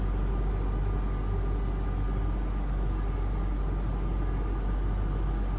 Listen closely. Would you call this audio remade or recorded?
recorded